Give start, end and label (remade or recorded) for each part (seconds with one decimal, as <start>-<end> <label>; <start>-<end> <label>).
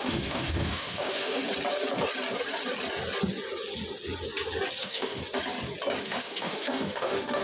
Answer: 0.0-1.4 remade; 1.4-4.8 recorded; 4.8-5.2 remade; 5.2-6.0 recorded; 6.0-7.4 remade